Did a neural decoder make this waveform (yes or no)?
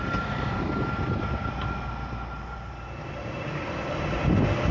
yes